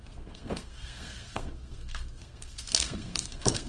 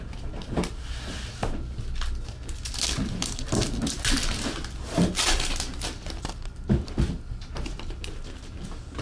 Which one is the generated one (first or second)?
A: first